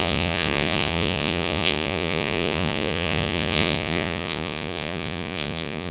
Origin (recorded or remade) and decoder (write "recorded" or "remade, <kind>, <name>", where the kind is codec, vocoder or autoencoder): remade, vocoder, Vocos